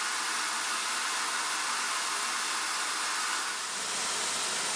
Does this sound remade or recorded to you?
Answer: recorded